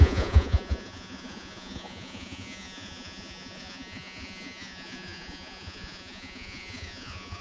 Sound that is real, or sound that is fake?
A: fake